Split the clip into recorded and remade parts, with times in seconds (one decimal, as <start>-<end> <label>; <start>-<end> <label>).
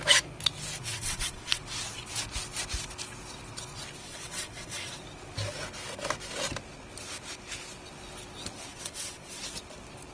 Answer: 0.0-0.8 recorded; 0.8-1.6 remade; 1.6-4.0 recorded; 4.0-5.0 remade; 5.0-8.7 recorded; 8.7-9.4 remade; 9.4-10.1 recorded